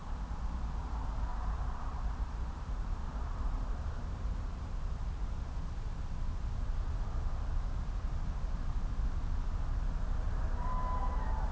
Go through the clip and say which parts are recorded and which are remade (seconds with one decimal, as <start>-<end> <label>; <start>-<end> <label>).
0.0-0.7 remade; 0.7-1.3 recorded; 1.3-5.4 remade; 5.4-11.5 recorded